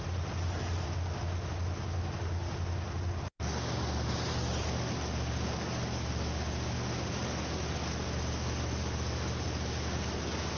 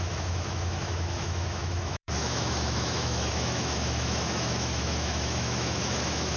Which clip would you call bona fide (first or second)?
first